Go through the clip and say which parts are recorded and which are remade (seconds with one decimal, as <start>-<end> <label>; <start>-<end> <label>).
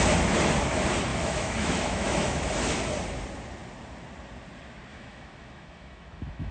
0.0-1.1 recorded; 1.1-2.8 remade; 2.8-4.9 recorded; 4.9-6.5 remade